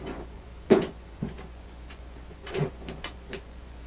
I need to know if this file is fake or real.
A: fake